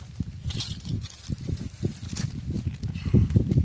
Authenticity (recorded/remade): recorded